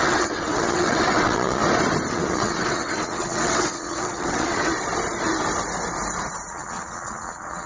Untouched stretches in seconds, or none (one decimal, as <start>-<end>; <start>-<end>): 1.6-2.1; 4.7-6.5